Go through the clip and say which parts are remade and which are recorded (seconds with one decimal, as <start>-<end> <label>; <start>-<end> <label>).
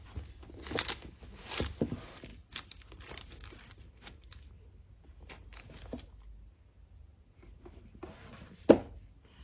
0.0-9.4 recorded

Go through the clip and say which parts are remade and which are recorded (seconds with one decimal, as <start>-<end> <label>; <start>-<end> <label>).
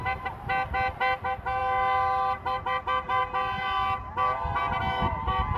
0.0-5.6 recorded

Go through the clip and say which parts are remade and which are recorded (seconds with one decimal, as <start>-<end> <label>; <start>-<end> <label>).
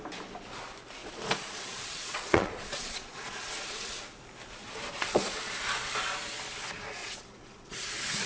0.0-1.0 recorded; 1.0-4.0 remade; 4.0-4.6 recorded; 4.6-5.5 remade; 5.5-7.0 recorded; 7.0-7.9 remade; 7.9-8.3 recorded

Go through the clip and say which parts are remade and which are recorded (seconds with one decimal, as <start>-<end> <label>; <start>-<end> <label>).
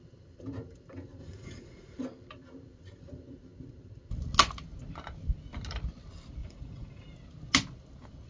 0.0-1.2 recorded; 1.2-2.0 remade; 2.0-6.4 recorded; 6.4-7.0 remade; 7.0-8.3 recorded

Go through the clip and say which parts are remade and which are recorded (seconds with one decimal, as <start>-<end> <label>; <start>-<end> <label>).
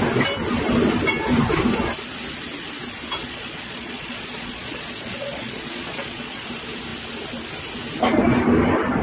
0.0-3.2 recorded; 3.2-6.4 remade; 6.4-9.0 recorded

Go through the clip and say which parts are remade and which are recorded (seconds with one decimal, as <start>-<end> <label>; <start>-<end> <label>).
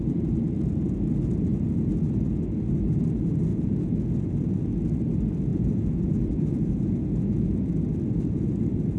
0.0-3.5 recorded; 3.5-4.1 remade; 4.1-5.5 recorded; 5.5-7.7 remade; 7.7-9.0 recorded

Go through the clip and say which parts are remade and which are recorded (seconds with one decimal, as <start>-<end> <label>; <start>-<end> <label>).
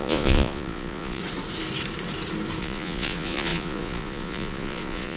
0.0-1.2 remade; 1.2-2.6 recorded; 2.6-5.2 remade